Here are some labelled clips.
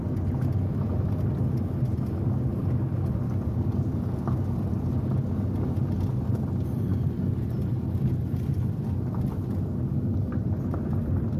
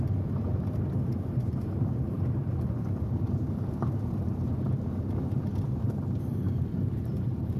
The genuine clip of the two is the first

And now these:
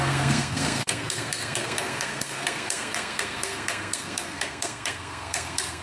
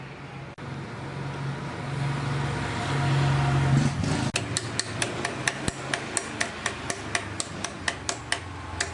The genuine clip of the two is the second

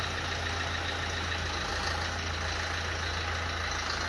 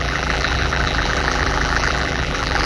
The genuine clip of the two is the first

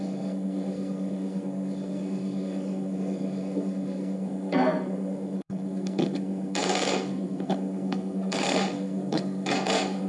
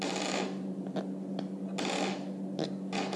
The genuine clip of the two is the second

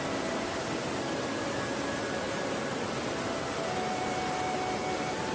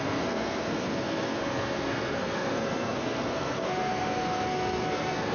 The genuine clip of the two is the first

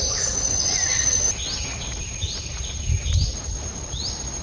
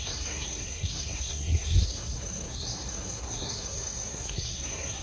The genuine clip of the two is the first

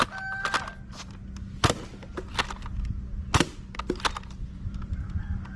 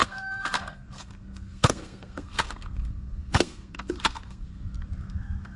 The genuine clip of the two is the first